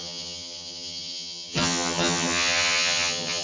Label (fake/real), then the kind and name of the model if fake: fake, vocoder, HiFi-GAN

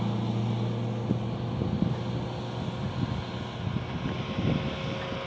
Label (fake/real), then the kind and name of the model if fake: real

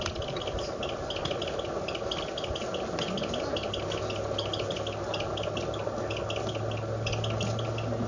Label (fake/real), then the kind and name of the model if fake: real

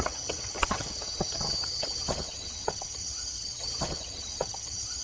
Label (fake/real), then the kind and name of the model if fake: fake, vocoder, HiFi-GAN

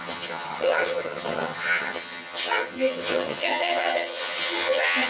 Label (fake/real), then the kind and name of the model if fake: fake, vocoder, HiFi-GAN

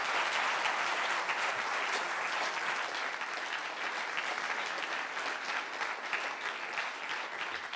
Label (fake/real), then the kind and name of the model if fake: real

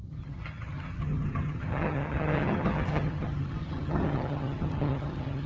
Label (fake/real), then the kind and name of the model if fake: fake, vocoder, HiFi-GAN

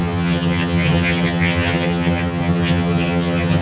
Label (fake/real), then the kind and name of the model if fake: fake, vocoder, HiFi-GAN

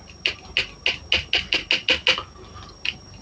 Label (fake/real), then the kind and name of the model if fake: real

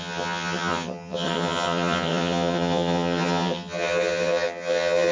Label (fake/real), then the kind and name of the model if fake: fake, vocoder, HiFi-GAN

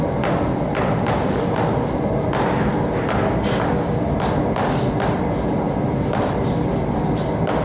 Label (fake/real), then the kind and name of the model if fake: real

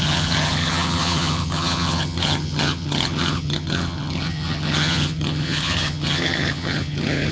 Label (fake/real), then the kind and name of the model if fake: fake, vocoder, HiFi-GAN